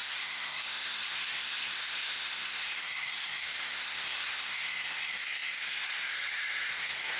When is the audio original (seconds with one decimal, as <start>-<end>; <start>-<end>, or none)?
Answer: none